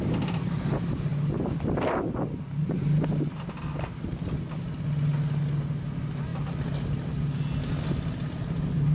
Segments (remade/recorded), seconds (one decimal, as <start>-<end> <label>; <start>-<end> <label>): 0.0-8.9 recorded